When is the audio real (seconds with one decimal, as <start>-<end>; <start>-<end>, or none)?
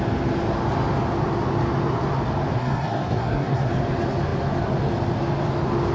0.0-2.6; 3.7-5.9